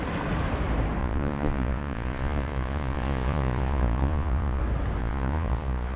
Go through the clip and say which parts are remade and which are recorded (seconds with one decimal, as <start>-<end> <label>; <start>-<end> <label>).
0.0-1.0 recorded; 1.0-4.6 remade; 4.6-5.0 recorded; 5.0-6.0 remade

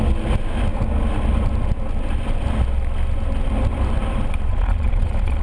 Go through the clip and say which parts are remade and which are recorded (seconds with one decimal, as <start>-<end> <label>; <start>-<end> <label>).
0.0-4.5 recorded; 4.5-5.4 remade